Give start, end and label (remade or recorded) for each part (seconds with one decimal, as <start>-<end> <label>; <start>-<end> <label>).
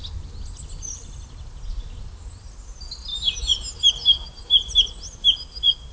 0.0-5.9 recorded